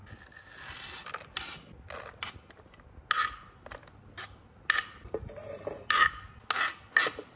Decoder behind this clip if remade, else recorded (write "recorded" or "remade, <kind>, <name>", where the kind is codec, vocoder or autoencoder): recorded